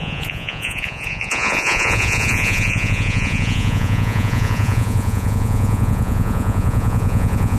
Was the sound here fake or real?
fake